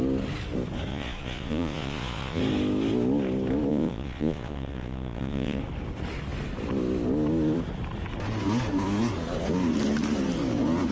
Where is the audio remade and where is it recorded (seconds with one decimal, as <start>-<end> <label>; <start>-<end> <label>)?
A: 0.0-0.9 recorded; 0.9-2.4 remade; 2.4-3.7 recorded; 3.7-5.6 remade; 5.6-10.9 recorded